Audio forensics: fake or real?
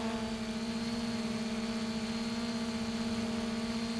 real